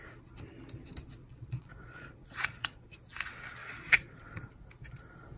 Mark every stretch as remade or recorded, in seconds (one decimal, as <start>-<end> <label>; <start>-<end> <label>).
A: 0.0-1.2 recorded; 1.2-3.0 remade; 3.0-3.6 recorded; 3.6-4.5 remade; 4.5-5.4 recorded

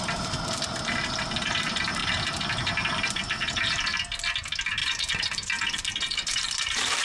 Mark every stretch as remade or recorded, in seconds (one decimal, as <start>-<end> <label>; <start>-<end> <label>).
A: 0.0-7.0 remade